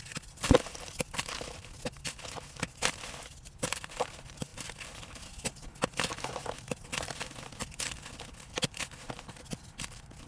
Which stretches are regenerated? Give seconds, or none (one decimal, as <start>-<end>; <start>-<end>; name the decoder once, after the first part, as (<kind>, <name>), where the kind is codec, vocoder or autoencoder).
none